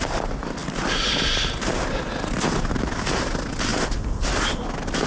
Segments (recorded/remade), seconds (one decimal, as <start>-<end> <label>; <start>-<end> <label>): 0.0-5.1 recorded